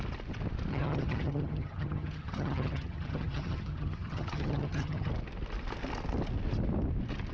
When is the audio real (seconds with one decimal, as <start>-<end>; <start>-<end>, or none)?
0.0-0.7; 5.1-7.3